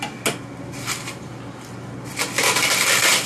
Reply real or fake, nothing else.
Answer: real